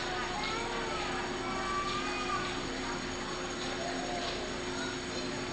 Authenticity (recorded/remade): recorded